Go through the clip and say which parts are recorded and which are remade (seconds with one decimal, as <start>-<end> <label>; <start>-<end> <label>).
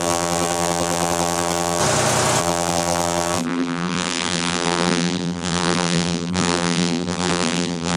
0.0-1.8 remade; 1.8-2.4 recorded; 2.4-8.0 remade